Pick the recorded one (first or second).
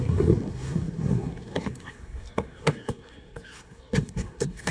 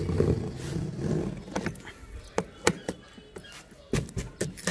second